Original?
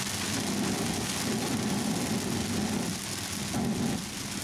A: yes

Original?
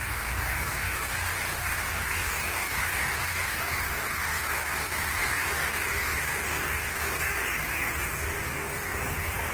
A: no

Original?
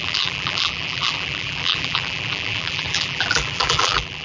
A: no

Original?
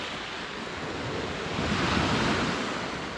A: yes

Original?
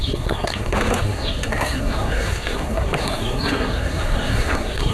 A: no